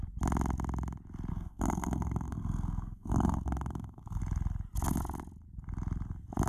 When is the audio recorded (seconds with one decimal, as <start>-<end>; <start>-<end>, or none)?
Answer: 0.0-1.3; 4.2-6.5

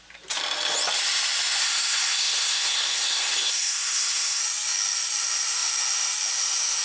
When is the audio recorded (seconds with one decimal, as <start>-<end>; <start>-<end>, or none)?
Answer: 0.0-1.6; 4.4-6.8

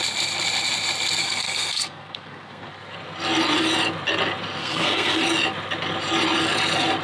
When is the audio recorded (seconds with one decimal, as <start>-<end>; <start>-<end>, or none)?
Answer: 0.0-1.2; 2.7-4.6; 5.2-7.0